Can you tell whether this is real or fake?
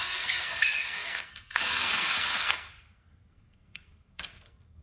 fake